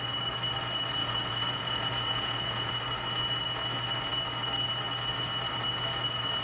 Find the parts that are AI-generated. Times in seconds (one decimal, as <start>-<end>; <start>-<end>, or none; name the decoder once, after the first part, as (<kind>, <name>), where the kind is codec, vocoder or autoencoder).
1.0-2.7 (vocoder, Vocos)